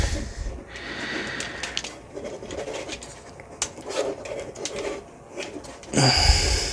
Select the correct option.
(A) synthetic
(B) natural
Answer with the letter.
B